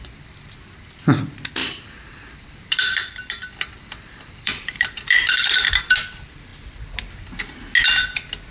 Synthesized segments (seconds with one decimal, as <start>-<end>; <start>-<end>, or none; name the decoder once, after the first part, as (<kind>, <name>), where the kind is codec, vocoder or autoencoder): 1.6-5.9 (vocoder, BigVGAN v2)